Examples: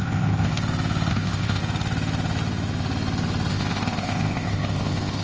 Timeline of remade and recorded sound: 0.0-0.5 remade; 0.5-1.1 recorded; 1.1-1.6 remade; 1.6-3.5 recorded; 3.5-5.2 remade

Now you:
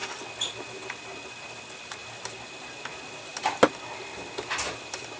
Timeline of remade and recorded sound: 0.0-2.0 recorded; 2.0-2.8 remade; 2.8-3.3 recorded; 3.3-4.2 remade; 4.2-5.2 recorded

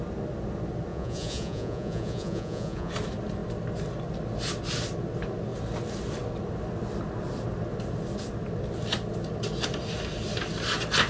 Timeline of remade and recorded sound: 0.0-0.9 recorded; 0.9-2.9 remade; 2.9-11.1 recorded